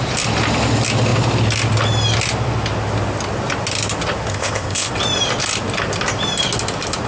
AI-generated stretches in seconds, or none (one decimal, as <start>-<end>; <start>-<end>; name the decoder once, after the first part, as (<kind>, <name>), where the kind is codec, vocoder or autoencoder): 4.3-4.9 (codec, ZipCodec)